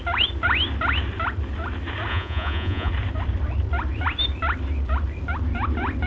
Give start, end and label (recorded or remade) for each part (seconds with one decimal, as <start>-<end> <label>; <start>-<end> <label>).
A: 0.0-2.1 recorded; 2.1-2.9 remade; 2.9-6.1 recorded

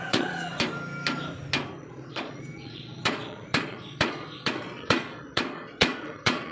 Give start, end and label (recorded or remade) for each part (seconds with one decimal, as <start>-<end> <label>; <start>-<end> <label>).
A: 0.0-0.5 remade; 0.5-1.8 recorded; 1.8-6.5 remade

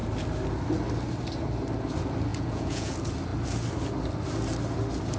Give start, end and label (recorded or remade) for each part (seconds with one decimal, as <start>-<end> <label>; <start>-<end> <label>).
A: 0.0-2.3 recorded; 2.3-2.9 remade; 2.9-5.2 recorded

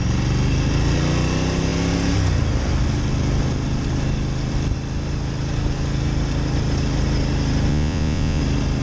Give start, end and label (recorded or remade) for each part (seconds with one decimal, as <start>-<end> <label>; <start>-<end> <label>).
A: 0.0-7.7 recorded; 7.7-8.4 remade; 8.4-8.8 recorded